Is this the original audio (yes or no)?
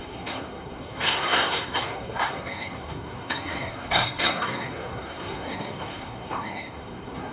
no